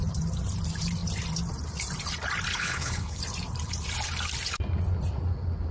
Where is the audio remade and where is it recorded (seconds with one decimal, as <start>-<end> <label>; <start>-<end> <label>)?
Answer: 0.0-2.5 recorded; 2.5-3.2 remade; 3.2-5.7 recorded